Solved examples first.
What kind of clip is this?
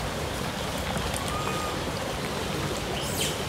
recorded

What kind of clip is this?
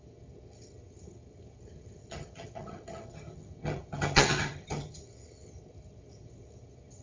remade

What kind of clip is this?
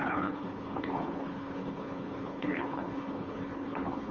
remade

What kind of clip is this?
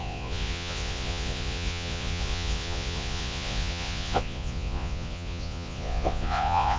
remade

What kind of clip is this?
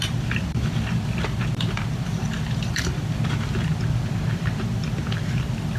recorded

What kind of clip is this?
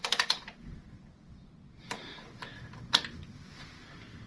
recorded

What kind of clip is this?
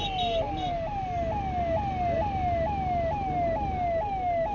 recorded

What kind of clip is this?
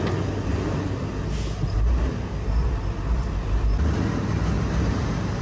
recorded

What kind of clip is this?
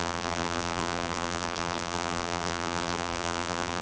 remade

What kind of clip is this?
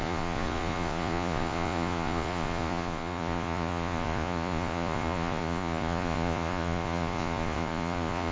remade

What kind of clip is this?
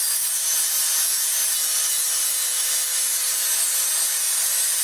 recorded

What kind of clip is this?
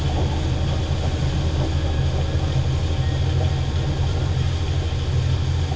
recorded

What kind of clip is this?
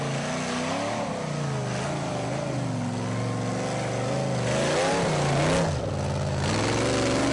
recorded